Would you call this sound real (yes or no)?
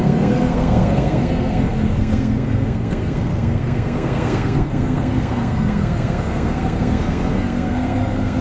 no